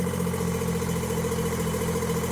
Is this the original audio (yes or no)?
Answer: yes